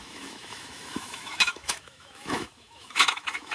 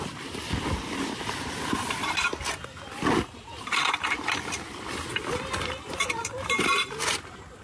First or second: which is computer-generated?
first